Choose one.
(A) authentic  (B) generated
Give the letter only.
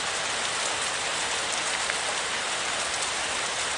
B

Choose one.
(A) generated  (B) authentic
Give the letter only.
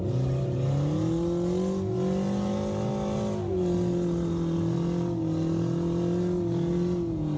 B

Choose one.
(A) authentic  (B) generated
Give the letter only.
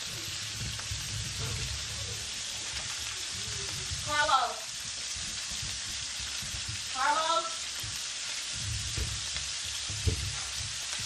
B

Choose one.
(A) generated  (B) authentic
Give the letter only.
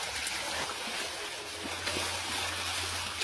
B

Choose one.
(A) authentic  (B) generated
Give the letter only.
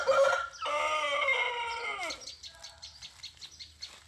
A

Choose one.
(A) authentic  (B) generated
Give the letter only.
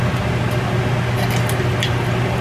A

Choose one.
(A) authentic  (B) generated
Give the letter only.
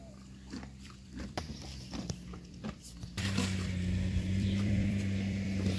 B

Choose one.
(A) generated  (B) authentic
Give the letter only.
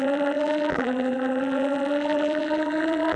A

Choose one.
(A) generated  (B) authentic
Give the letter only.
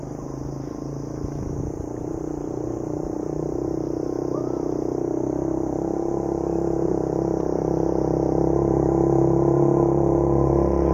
A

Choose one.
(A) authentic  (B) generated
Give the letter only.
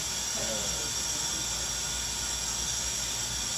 A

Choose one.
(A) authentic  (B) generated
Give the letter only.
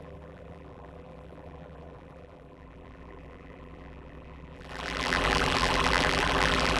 B